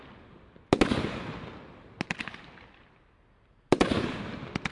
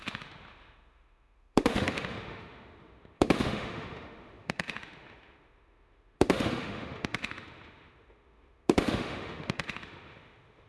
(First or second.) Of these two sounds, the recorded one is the first